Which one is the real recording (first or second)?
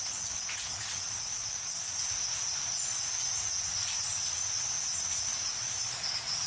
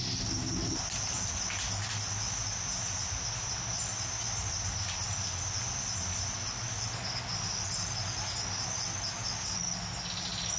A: second